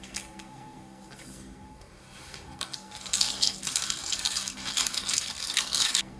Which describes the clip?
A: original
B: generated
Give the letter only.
B